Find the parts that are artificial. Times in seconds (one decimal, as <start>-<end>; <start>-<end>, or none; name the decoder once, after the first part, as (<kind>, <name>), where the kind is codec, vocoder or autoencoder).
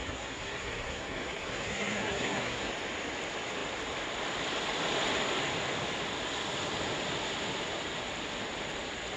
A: 0.0-2.7 (codec, SNAC)